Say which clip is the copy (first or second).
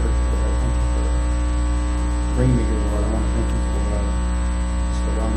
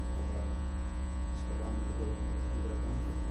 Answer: second